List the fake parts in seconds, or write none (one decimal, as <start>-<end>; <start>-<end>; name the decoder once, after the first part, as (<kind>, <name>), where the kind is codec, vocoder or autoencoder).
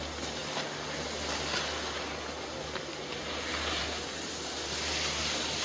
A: none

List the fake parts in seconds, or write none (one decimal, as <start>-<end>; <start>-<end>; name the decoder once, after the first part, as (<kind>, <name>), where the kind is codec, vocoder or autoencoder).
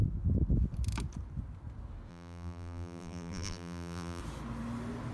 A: 2.1-4.2 (vocoder, BigVGAN v2)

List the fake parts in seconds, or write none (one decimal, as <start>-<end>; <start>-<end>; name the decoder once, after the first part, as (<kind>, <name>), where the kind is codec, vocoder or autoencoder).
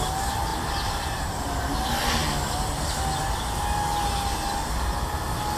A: 0.5-1.7 (vocoder, BigVGAN v2)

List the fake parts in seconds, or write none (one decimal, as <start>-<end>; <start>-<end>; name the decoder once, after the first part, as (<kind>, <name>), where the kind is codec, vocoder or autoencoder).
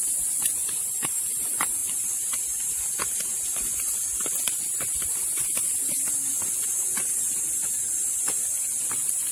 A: 0.0-6.3 (vocoder, BigVGAN v2); 7.1-9.3